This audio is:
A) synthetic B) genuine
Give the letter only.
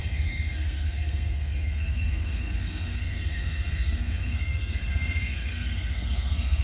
A